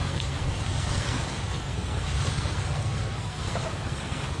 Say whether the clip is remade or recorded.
remade